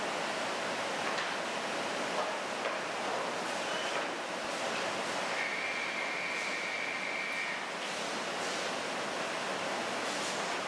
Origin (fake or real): real